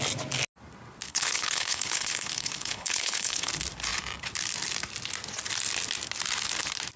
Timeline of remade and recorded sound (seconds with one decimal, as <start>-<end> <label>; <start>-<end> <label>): 0.0-1.1 recorded; 1.1-3.5 remade; 3.5-7.0 recorded

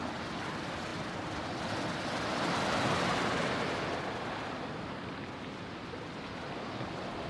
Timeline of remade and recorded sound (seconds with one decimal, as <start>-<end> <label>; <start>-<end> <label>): 0.0-7.3 recorded

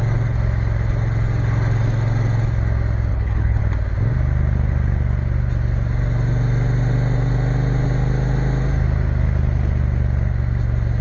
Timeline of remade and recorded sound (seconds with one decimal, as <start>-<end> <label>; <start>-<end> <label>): 0.0-3.1 recorded; 3.1-3.6 remade; 3.6-11.0 recorded

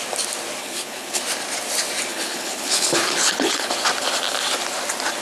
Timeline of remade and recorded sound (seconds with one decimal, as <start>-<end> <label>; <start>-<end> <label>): 0.0-0.6 recorded; 0.6-1.2 remade; 1.2-2.1 recorded; 2.1-3.7 remade; 3.7-5.2 recorded

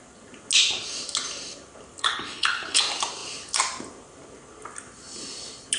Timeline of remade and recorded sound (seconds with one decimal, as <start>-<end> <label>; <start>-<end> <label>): 0.0-2.0 recorded; 2.0-2.8 remade; 2.8-5.8 recorded

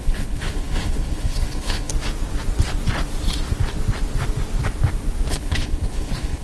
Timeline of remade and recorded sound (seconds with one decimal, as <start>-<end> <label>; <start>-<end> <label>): 0.0-1.9 remade; 1.9-5.3 recorded; 5.3-6.4 remade

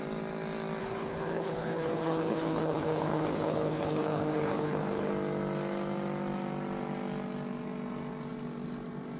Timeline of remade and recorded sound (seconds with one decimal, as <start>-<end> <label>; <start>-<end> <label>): 0.0-0.8 recorded; 0.8-5.1 remade; 5.1-9.2 recorded